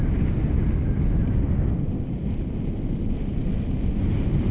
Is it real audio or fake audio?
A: real